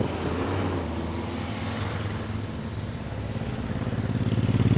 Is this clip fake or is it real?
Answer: real